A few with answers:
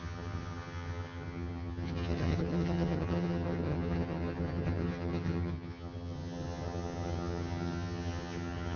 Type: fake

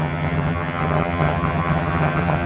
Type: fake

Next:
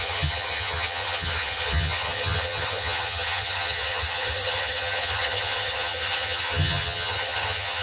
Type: fake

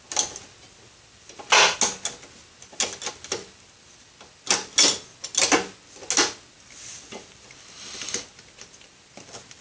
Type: real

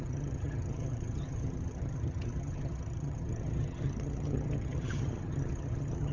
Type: fake